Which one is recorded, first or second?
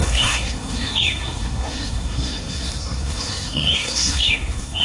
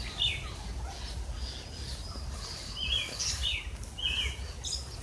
second